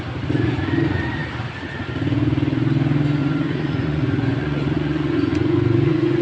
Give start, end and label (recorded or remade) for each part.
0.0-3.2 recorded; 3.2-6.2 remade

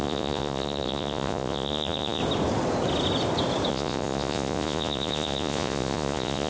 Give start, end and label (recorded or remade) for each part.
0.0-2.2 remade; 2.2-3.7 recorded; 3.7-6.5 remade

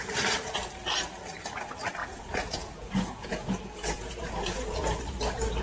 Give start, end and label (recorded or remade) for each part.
0.0-2.0 recorded; 2.0-5.0 remade; 5.0-5.6 recorded

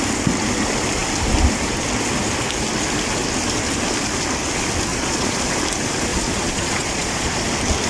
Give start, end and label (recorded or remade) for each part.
0.0-4.9 recorded; 4.9-5.5 remade; 5.5-6.1 recorded; 6.1-7.4 remade; 7.4-7.9 recorded

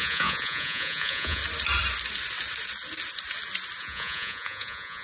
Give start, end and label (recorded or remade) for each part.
0.0-1.4 remade; 1.4-3.8 recorded; 3.8-5.0 remade

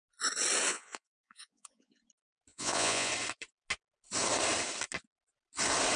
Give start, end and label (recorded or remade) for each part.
0.0-0.7 recorded; 0.7-2.0 remade; 2.0-2.5 recorded; 2.5-3.1 remade; 3.1-6.0 recorded